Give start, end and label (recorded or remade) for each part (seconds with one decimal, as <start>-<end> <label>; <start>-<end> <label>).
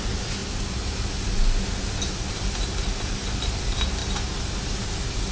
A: 0.0-0.4 remade; 0.4-2.3 recorded; 2.3-4.0 remade; 4.0-4.6 recorded; 4.6-5.3 remade